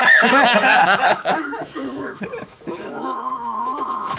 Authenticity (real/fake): fake